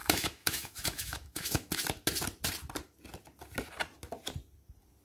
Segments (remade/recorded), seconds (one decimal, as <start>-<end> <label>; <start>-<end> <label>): 0.0-1.7 remade; 1.7-5.0 recorded